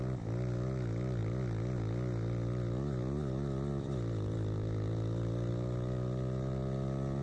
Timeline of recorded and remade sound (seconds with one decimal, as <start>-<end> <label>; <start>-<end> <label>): 0.0-7.2 recorded